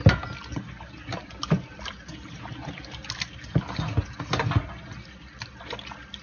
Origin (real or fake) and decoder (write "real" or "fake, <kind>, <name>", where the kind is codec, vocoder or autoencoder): real